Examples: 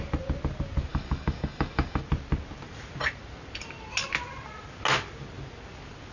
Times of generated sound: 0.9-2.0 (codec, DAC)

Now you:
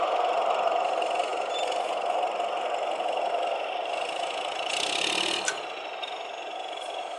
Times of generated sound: none

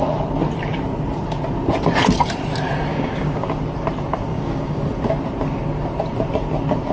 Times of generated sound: 2.9-3.5 (codec, DAC); 4.3-4.8

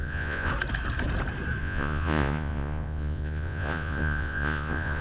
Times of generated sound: 0.0-0.5 (vocoder, Vocos); 1.6-5.0

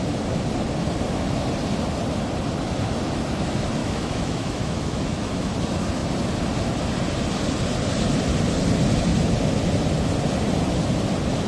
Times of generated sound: 3.8-5.5 (autoencoder, DAC-VAE)

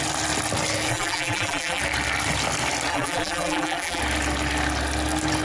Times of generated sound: 0.9-1.8 (vocoder, BigVGAN v2); 2.9-4.0

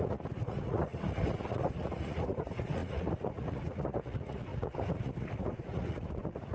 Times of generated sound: 0.0-6.5 (vocoder, Vocos)